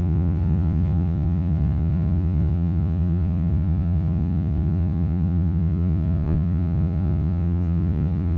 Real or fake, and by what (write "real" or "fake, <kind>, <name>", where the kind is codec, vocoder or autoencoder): fake, vocoder, Vocos